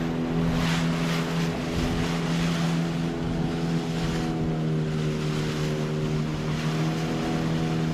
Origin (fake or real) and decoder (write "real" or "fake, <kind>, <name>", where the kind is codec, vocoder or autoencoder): real